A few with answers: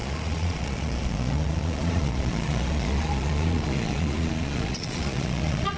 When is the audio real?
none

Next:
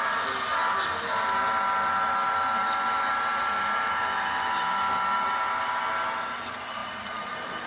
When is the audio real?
0.0-7.7

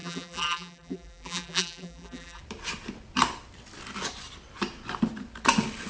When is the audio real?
2.4-5.9

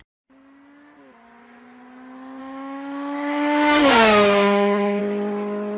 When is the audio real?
0.0-2.4; 5.0-5.8

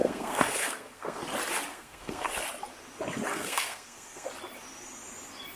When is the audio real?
1.2-1.7; 2.3-3.3; 4.3-5.6

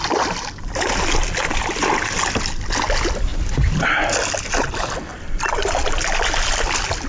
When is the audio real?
0.0-7.1